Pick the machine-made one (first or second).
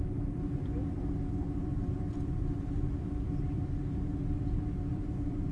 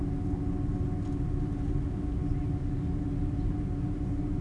first